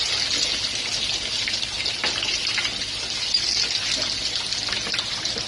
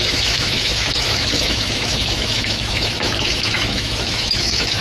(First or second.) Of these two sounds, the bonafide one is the first